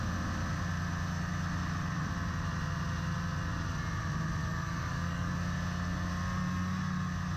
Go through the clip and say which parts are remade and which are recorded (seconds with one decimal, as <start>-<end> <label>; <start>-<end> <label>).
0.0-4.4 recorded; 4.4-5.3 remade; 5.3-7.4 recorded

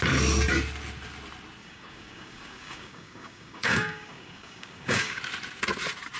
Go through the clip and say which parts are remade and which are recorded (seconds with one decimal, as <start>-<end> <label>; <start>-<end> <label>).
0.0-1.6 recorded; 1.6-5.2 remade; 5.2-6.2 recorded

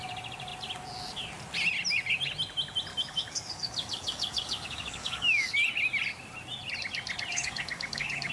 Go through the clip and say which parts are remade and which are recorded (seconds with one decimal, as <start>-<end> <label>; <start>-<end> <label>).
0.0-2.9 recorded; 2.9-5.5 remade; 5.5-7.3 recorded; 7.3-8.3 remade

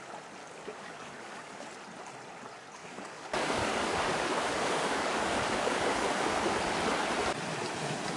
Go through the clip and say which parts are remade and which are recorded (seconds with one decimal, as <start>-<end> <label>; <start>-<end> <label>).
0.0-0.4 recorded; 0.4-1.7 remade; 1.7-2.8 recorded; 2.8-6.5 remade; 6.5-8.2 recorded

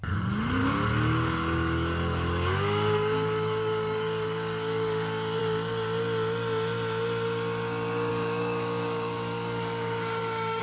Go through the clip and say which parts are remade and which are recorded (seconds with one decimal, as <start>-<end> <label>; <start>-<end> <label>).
0.0-0.6 recorded; 0.6-5.4 remade; 5.4-8.1 recorded; 8.1-10.6 remade

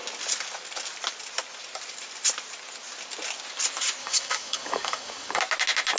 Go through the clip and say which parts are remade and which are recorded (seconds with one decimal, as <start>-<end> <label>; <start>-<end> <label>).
0.0-4.0 recorded; 4.0-5.4 remade; 5.4-6.0 recorded